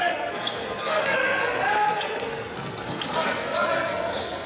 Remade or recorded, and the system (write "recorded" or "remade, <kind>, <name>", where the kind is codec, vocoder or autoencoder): remade, codec, SNAC